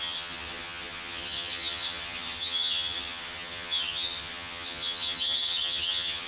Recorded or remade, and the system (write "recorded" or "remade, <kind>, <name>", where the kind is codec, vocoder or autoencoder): remade, vocoder, HiFi-GAN